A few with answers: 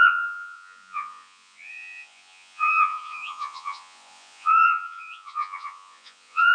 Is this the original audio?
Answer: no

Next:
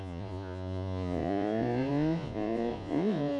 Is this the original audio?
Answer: no